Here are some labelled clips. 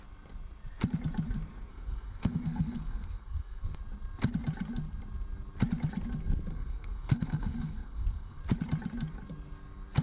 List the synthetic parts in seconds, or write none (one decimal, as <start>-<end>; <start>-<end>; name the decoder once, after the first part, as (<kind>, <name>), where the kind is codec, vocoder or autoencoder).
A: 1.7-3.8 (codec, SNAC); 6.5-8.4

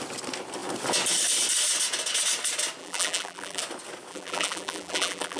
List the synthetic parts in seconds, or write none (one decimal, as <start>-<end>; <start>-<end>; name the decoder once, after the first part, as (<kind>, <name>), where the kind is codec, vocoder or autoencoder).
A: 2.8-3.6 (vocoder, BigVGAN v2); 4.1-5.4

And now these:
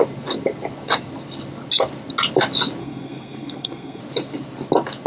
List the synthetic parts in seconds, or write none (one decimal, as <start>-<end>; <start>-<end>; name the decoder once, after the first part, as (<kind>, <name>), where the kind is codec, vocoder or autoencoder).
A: 2.8-4.0 (codec, SNAC)

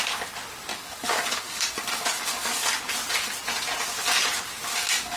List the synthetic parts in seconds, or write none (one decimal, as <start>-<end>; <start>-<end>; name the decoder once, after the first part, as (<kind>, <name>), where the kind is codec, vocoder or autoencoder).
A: 0.7-2.8 (codec, DAC); 4.7-5.2

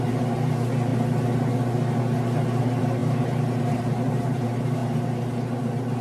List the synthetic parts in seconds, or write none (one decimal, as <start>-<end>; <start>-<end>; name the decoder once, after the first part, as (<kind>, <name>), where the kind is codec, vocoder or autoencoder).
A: 0.0-0.9 (vocoder, BigVGAN v2); 2.6-4.8